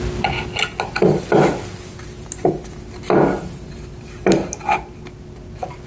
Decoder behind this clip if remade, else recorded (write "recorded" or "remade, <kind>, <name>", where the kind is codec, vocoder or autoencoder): recorded